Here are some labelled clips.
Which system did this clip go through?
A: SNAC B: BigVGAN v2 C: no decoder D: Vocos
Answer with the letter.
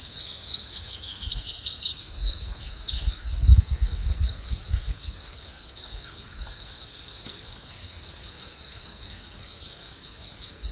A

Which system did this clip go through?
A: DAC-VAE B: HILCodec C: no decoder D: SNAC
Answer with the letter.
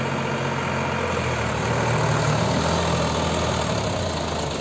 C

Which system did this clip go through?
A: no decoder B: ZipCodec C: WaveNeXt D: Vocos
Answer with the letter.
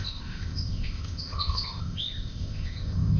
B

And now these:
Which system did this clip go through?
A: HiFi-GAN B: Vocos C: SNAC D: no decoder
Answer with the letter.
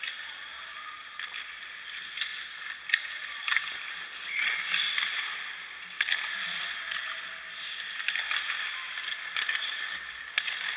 D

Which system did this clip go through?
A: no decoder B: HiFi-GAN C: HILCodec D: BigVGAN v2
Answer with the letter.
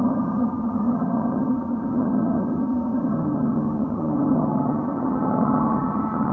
B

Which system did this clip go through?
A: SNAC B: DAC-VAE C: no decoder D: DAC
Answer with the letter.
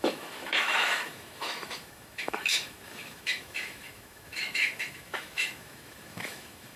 B